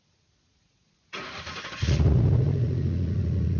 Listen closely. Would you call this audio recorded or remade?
remade